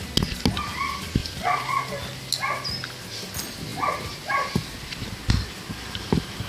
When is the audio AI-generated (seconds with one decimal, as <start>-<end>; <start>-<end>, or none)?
1.2-1.8